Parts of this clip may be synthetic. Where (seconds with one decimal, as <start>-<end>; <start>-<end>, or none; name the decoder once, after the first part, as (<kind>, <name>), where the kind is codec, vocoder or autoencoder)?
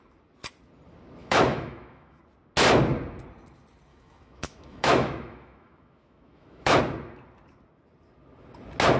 1.2-2.2 (autoencoder, DAC-VAE); 3.9-6.8